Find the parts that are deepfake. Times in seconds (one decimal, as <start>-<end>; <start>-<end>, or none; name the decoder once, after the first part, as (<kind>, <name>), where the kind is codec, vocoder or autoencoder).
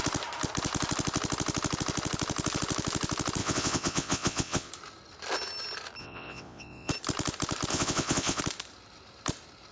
3.4-4.7 (vocoder, WaveNeXt); 6.0-6.9; 7.7-8.4